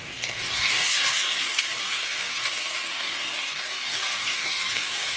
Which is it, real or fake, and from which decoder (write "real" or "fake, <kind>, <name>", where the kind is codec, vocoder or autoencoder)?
fake, codec, DAC